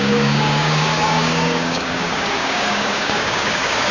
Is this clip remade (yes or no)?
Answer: yes